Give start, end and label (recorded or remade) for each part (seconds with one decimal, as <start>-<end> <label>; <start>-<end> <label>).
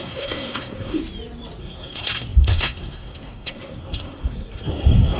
0.0-1.0 remade; 1.0-1.6 recorded; 1.6-5.2 remade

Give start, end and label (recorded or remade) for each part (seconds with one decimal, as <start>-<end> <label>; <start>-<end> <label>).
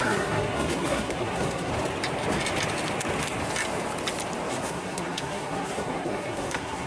0.0-1.7 remade; 1.7-4.5 recorded; 4.5-6.9 remade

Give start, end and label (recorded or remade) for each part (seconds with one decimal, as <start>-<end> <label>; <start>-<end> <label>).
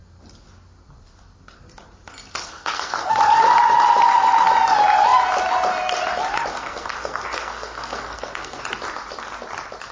0.0-2.4 recorded; 2.4-3.1 remade; 3.1-6.5 recorded; 6.5-8.6 remade; 8.6-9.9 recorded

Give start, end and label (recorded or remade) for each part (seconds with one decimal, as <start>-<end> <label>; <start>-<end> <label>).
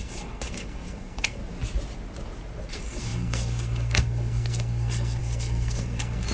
0.0-1.4 remade; 1.4-2.7 recorded; 2.7-6.3 remade